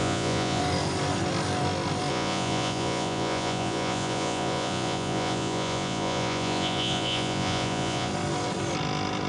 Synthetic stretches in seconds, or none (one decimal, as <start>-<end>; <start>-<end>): 0.0-0.6; 2.1-8.1